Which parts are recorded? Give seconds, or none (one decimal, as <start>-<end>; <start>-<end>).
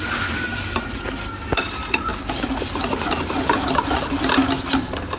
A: 0.0-5.2